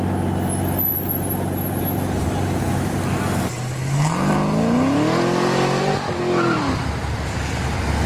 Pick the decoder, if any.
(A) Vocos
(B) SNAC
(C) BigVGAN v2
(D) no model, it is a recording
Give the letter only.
D